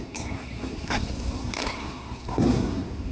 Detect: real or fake fake